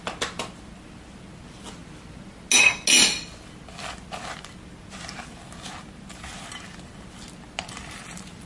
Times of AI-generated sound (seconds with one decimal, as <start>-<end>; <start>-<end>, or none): none